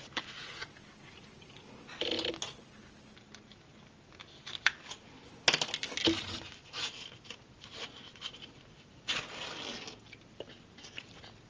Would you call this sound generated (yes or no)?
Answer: no